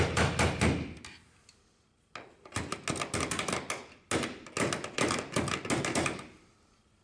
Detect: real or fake real